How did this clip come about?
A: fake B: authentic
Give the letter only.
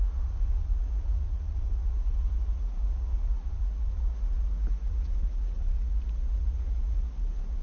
A